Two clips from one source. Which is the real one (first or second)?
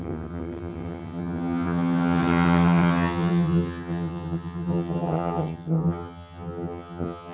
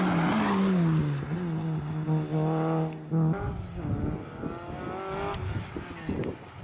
second